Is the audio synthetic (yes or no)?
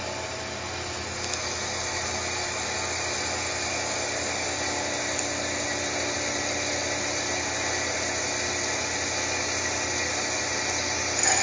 no